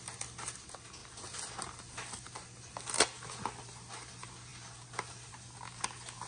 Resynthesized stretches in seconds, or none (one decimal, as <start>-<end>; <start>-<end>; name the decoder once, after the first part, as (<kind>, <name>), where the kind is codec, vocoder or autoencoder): none